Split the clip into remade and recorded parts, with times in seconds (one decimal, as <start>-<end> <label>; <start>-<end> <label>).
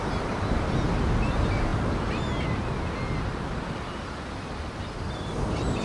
0.0-5.8 recorded